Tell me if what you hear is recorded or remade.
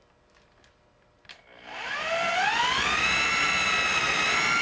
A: recorded